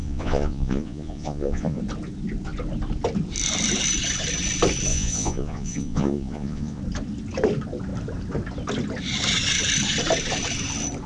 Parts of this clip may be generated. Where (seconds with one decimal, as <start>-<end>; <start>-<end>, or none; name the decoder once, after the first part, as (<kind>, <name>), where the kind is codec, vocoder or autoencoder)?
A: 0.0-1.8 (vocoder, Vocos); 4.9-6.8